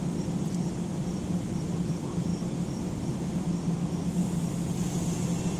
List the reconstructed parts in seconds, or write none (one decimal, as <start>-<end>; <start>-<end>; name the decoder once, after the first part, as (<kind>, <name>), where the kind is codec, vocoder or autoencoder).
none